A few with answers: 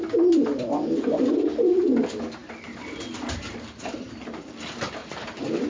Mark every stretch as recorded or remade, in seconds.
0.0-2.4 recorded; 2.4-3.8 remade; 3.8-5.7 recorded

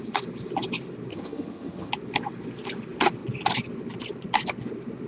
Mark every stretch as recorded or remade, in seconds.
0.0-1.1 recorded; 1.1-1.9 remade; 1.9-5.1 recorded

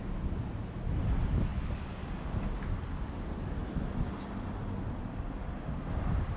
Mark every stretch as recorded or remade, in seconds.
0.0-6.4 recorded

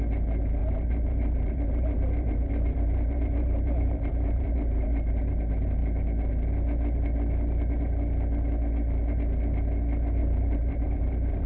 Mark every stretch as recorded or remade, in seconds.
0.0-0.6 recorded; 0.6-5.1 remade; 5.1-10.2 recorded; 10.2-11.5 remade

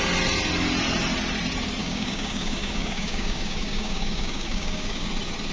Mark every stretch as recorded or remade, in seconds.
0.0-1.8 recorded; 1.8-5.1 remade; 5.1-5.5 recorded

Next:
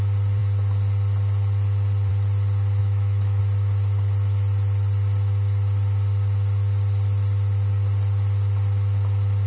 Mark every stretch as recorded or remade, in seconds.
0.0-2.8 recorded; 2.8-3.4 remade; 3.4-9.5 recorded